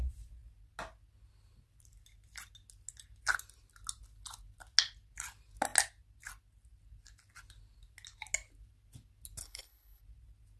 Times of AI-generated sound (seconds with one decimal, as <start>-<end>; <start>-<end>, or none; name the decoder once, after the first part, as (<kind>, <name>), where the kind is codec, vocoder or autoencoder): 9.4-10.0 (codec, HILCodec)